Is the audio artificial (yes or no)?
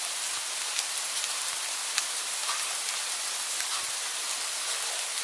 no